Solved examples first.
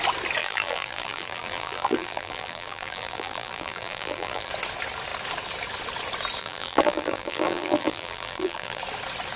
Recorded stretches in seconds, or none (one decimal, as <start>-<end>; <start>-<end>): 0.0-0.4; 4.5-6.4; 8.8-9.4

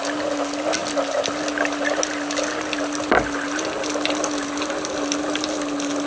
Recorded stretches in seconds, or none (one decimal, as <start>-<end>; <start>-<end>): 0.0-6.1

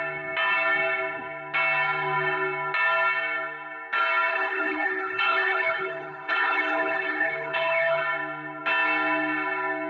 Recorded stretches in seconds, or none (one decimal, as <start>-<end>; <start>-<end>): 0.0-4.3; 8.0-9.9

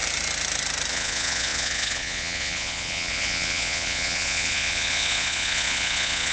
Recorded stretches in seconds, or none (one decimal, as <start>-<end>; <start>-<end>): 0.0-0.9